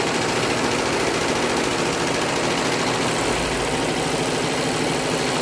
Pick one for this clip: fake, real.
real